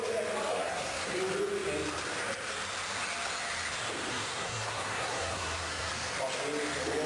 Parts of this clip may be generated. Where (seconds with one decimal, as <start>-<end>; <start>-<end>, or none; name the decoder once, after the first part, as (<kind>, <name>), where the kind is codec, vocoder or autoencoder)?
0.5-1.2 (codec, SNAC); 4.1-5.9

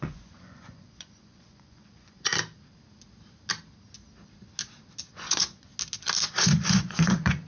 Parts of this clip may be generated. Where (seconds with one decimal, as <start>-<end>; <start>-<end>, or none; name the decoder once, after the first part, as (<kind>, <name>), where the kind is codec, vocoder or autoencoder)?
0.0-2.3 (vocoder, Vocos); 5.1-5.7; 6.3-7.5